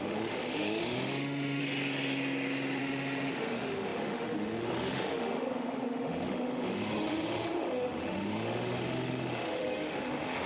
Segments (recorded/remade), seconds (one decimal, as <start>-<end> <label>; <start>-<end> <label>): 0.0-1.6 remade; 1.6-2.8 recorded; 2.8-10.5 remade